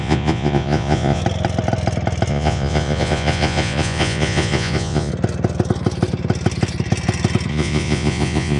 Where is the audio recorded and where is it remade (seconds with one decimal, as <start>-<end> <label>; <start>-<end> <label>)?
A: 0.0-1.2 remade; 1.2-2.3 recorded; 2.3-5.1 remade; 5.1-7.5 recorded; 7.5-8.6 remade